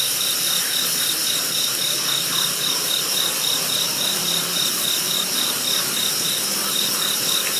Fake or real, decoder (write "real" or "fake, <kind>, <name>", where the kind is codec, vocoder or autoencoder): real